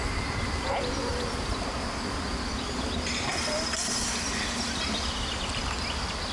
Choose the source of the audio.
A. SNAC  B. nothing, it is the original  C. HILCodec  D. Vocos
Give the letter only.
B